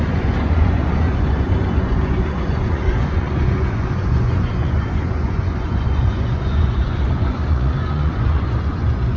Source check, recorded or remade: remade